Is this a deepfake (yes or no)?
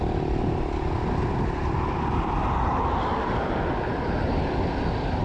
no